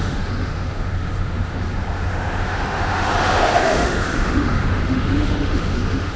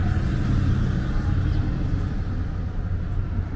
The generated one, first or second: first